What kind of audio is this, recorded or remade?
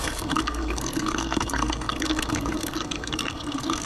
remade